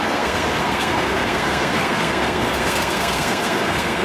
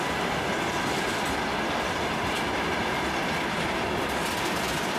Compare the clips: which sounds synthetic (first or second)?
first